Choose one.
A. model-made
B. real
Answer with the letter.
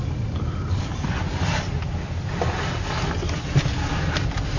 B